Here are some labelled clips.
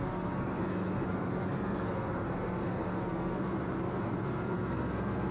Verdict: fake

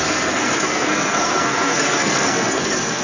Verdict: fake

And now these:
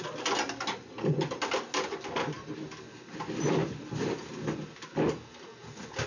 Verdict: real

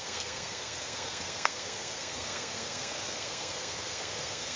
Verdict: fake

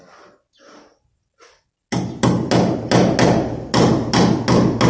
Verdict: real